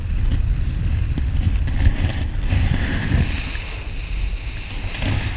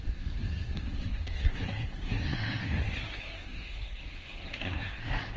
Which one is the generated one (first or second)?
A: second